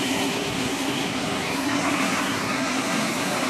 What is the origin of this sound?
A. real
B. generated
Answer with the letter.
B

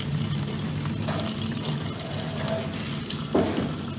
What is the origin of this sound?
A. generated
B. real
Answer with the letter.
B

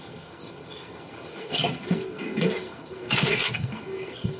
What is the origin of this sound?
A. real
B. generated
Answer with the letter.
B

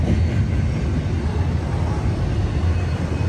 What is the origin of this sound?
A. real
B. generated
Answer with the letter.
A